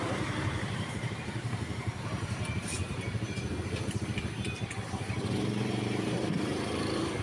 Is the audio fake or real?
fake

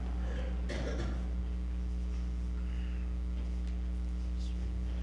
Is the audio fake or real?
real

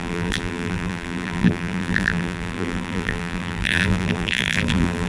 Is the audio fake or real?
fake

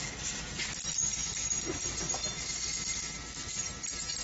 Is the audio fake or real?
real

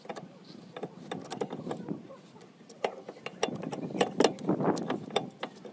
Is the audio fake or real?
real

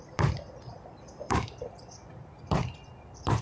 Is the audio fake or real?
fake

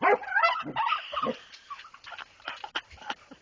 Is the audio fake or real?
fake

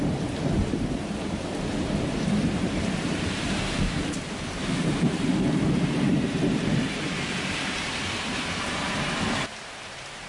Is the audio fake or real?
fake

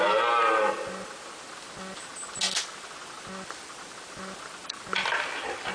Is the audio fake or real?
fake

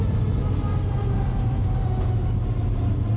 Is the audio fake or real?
real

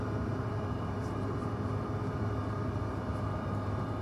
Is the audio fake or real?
fake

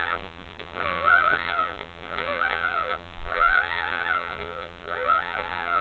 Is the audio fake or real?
fake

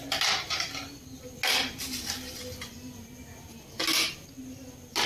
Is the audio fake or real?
real